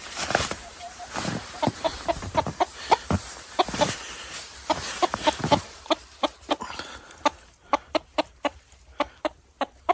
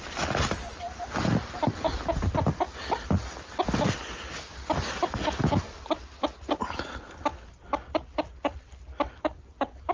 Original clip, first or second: second